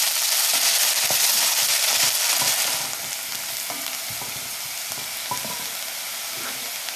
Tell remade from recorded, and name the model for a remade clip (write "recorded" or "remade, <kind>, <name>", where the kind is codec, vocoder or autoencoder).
recorded